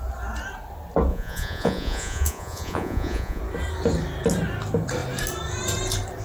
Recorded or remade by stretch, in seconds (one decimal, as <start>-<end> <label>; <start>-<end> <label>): 0.0-1.1 recorded; 1.1-3.4 remade; 3.4-6.2 recorded